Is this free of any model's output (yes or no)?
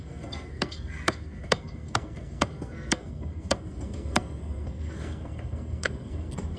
no